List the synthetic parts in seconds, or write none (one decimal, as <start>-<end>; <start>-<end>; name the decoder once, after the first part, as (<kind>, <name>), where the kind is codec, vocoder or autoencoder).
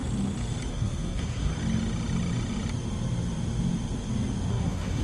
0.7-1.5 (codec, SNAC); 4.5-5.0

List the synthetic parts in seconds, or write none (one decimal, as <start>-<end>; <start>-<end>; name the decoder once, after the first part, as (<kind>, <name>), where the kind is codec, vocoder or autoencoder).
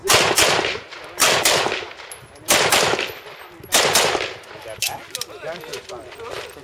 none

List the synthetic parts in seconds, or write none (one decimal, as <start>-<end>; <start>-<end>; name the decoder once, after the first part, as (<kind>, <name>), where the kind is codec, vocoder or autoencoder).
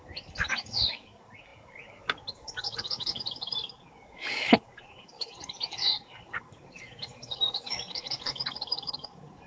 0.0-9.5 (codec, DAC)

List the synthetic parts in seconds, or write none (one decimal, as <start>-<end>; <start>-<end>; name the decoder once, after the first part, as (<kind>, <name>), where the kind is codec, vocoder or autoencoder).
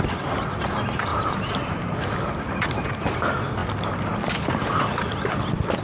1.1-1.7 (vocoder, BigVGAN v2)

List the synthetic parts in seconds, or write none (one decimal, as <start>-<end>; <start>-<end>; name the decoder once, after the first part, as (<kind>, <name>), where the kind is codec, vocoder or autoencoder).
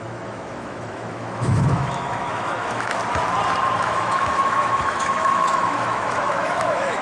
0.0-3.0 (autoencoder, DAC-VAE); 3.8-7.0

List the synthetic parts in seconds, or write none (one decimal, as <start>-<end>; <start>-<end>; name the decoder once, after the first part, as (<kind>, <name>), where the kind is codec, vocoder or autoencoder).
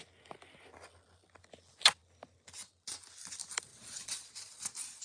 3.7-5.0 (vocoder, Vocos)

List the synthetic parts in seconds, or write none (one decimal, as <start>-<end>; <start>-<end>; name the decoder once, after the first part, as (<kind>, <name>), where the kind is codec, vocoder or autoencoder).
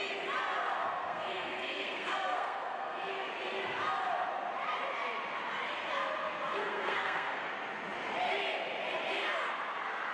0.8-3.3 (codec, SNAC); 6.5-7.5